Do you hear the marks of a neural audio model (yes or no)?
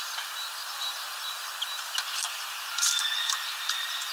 yes